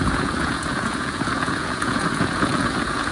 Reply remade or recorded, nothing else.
remade